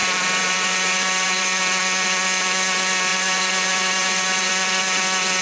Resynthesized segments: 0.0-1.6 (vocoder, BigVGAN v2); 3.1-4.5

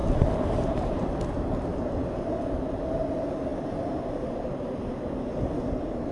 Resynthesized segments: 0.0-0.9 (vocoder, BigVGAN v2); 1.7-2.3

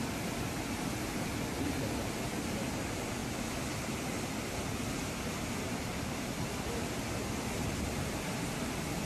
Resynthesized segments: none

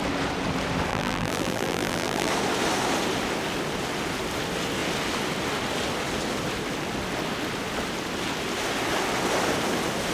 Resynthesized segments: 0.9-2.3 (vocoder, BigVGAN v2)

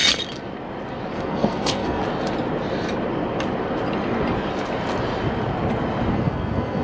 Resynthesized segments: 1.1-2.0 (codec, SNAC); 6.1-6.8

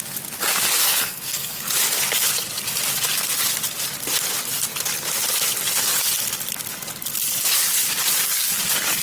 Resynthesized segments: 0.8-1.7 (codec, SNAC)